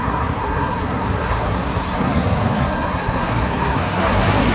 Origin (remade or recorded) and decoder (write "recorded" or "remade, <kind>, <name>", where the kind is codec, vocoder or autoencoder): remade, codec, SNAC